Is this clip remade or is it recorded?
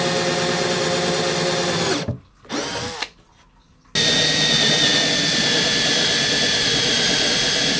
recorded